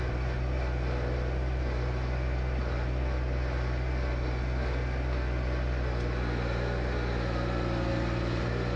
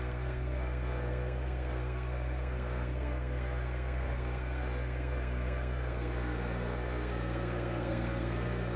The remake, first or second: second